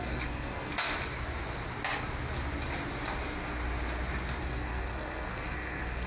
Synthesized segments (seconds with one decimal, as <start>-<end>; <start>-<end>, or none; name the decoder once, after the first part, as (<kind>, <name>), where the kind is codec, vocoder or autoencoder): 0.0-0.7 (codec, SNAC); 4.4-6.1